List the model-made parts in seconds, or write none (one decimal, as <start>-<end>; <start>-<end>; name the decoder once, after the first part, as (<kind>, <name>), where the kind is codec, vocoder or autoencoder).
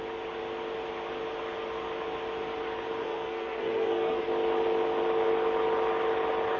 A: 3.0-4.2 (codec, SNAC)